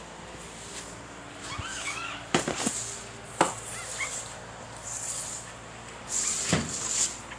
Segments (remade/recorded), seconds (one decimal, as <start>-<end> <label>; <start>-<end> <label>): 0.0-1.7 recorded; 1.7-2.4 remade; 2.4-7.4 recorded